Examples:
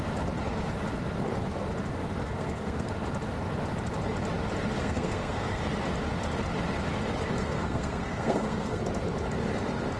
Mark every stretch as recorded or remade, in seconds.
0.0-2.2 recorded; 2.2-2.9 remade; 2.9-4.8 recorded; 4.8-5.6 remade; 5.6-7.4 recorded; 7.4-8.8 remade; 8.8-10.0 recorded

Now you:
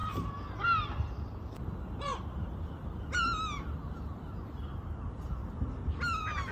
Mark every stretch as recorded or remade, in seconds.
0.0-6.5 recorded

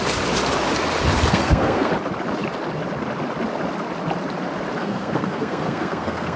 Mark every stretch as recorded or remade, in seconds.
0.0-1.3 recorded; 1.3-1.9 remade; 1.9-4.8 recorded; 4.8-6.4 remade

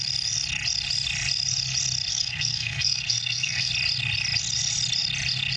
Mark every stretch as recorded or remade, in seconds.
0.0-2.1 recorded; 2.1-3.7 remade; 3.7-5.6 recorded

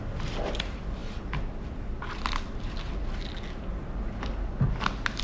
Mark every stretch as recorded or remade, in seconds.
0.0-5.2 recorded

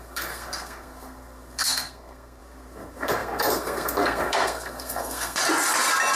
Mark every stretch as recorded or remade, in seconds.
0.0-5.4 remade; 5.4-6.2 recorded